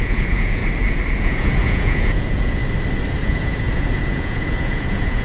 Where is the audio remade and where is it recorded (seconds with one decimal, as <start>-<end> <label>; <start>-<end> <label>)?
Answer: 0.0-0.6 remade; 0.6-1.2 recorded; 1.2-2.6 remade; 2.6-3.2 recorded; 3.2-5.2 remade